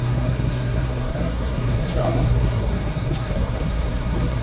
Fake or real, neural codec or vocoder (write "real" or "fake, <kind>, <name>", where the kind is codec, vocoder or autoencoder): fake, codec, SNAC